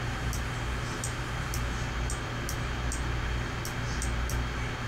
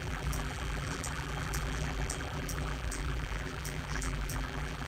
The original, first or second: first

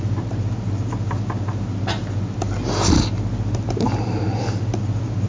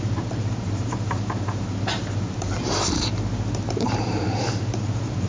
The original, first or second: first